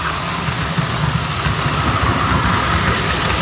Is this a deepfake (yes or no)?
no